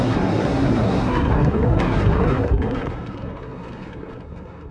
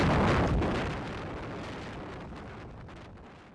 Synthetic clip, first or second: first